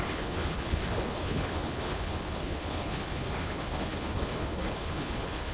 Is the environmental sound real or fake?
fake